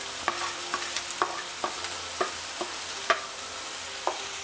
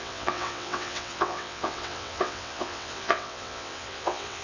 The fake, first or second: second